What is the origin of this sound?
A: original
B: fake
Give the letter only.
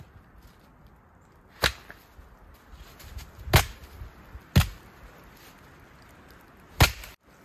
A